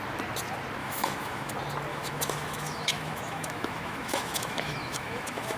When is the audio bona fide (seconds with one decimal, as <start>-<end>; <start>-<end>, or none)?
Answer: 0.0-0.8; 1.5-1.9